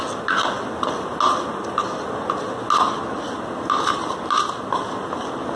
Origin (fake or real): real